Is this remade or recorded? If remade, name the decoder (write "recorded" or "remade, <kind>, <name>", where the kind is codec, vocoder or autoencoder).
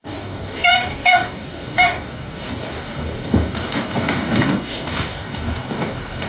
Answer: remade, codec, DAC